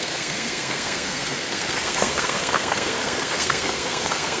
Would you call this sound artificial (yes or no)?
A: yes